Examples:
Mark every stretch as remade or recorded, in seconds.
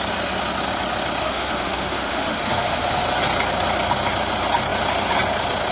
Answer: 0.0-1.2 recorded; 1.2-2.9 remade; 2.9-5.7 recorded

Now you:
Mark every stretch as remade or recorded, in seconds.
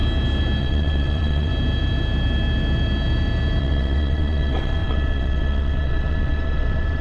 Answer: 0.0-0.6 recorded; 0.6-1.5 remade; 1.5-3.6 recorded; 3.6-7.0 remade